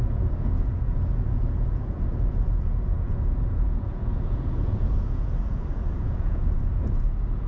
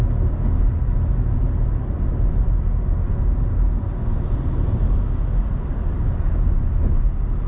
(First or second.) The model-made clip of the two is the first